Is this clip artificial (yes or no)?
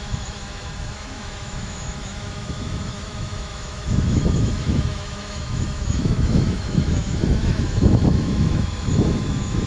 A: yes